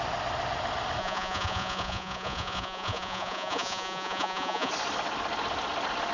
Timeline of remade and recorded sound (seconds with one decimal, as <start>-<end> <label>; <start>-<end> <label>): 0.0-1.0 recorded; 1.0-4.7 remade; 4.7-6.1 recorded